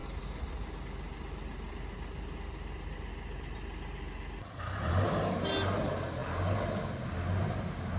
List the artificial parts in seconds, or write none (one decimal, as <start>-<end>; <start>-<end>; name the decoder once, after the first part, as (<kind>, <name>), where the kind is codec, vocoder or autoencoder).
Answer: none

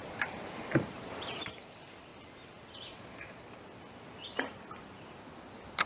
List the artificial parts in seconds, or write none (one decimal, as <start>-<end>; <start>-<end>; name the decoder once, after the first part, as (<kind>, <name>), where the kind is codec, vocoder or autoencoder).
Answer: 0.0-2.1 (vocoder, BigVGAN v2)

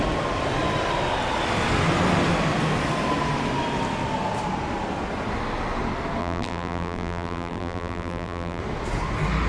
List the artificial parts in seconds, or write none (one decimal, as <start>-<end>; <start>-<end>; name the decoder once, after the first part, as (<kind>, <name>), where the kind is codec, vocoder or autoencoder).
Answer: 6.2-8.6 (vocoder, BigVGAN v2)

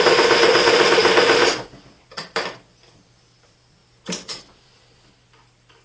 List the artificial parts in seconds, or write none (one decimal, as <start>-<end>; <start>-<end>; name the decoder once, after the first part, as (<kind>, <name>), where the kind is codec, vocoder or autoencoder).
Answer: 0.0-3.8 (vocoder, BigVGAN v2); 4.3-5.8

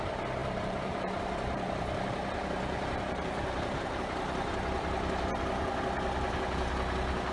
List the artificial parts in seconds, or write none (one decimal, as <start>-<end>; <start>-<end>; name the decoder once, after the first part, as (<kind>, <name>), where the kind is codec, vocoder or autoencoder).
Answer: 0.4-4.0 (vocoder, BigVGAN v2)

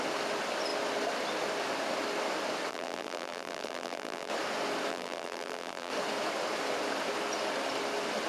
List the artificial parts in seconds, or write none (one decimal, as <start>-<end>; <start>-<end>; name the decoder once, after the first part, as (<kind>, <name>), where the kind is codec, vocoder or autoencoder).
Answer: 2.7-4.3 (vocoder, BigVGAN v2); 4.9-5.9

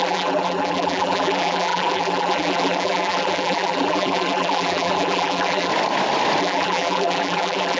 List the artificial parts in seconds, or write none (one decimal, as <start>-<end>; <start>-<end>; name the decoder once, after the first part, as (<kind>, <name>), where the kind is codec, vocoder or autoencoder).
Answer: 0.0-5.7 (vocoder, BigVGAN v2); 6.4-7.8